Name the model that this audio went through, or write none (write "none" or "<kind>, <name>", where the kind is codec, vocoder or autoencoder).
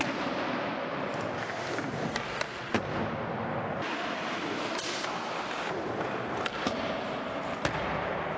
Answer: none